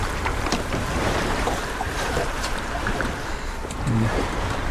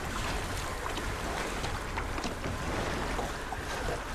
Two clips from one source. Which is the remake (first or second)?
first